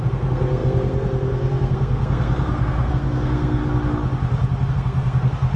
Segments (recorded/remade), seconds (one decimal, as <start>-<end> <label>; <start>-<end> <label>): 0.0-3.6 remade; 3.6-4.7 recorded; 4.7-5.6 remade

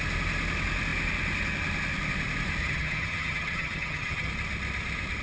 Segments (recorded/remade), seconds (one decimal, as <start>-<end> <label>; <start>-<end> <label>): 0.0-2.6 recorded; 2.6-4.3 remade; 4.3-5.2 recorded

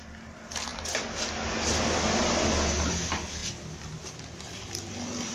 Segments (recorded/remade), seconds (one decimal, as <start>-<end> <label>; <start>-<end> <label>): 0.0-5.3 recorded

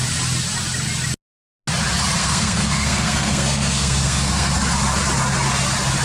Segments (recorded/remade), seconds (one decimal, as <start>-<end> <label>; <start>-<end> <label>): 0.0-2.2 recorded; 2.2-4.5 remade; 4.5-6.0 recorded